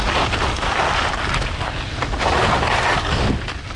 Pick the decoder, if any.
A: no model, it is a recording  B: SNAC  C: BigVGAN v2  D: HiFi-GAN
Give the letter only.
A